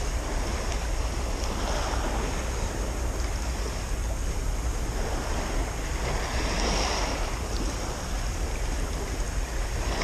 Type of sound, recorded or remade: recorded